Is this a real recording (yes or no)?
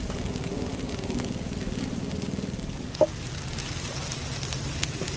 yes